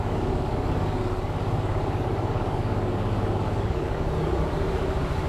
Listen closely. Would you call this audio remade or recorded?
remade